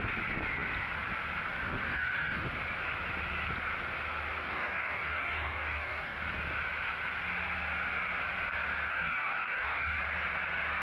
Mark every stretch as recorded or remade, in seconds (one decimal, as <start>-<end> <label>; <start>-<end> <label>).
0.0-1.9 recorded; 1.9-2.4 remade; 2.4-4.4 recorded; 4.4-6.2 remade; 6.2-8.9 recorded; 8.9-10.0 remade; 10.0-10.8 recorded